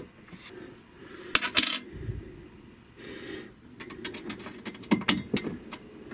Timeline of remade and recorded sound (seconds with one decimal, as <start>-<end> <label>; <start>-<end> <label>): 0.0-6.1 recorded